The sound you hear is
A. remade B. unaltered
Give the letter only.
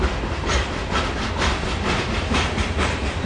B